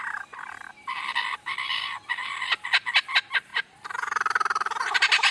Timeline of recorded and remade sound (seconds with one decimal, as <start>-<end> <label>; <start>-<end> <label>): 0.0-5.3 remade

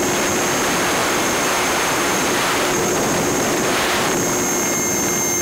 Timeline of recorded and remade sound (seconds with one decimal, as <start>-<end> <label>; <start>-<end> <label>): 0.0-1.0 recorded; 1.0-4.2 remade; 4.2-5.4 recorded

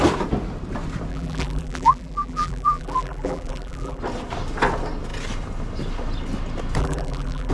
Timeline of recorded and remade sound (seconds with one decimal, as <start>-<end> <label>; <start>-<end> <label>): 0.0-1.1 recorded; 1.1-4.0 remade; 4.0-6.8 recorded; 6.8-7.5 remade

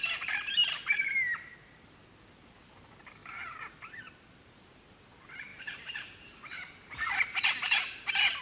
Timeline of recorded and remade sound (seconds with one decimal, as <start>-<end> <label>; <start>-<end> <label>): 0.0-0.6 remade; 0.6-2.4 recorded; 2.4-3.2 remade; 3.2-4.1 recorded; 4.1-8.4 remade

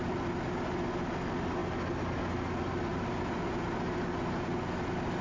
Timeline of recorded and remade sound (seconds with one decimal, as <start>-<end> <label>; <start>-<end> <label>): 0.0-2.9 recorded; 2.9-4.2 remade; 4.2-5.2 recorded

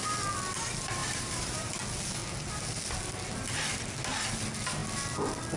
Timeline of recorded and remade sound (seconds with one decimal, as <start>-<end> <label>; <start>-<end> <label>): 0.0-1.0 recorded; 1.0-1.7 remade; 1.7-5.6 recorded